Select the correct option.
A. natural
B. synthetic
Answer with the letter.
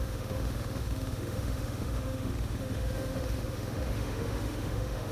B